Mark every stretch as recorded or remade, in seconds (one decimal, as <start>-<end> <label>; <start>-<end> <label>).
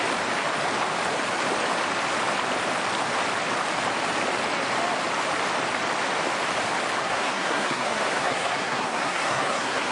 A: 0.0-7.0 recorded; 7.0-9.9 remade